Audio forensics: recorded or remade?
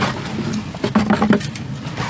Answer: recorded